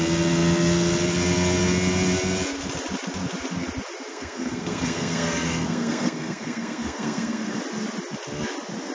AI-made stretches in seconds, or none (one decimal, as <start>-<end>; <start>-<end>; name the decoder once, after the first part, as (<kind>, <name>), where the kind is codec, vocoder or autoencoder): 4.1-7.6 (codec, SNAC)